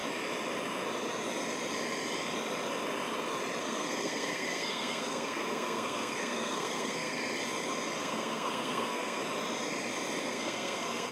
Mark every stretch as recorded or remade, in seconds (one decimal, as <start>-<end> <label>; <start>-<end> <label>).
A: 0.0-3.6 recorded; 3.6-7.2 remade; 7.2-8.0 recorded; 8.0-9.2 remade; 9.2-10.2 recorded; 10.2-11.1 remade